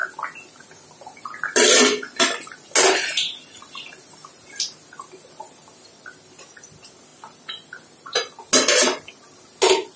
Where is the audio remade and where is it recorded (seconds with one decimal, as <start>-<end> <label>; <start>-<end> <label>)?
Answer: 0.0-10.0 recorded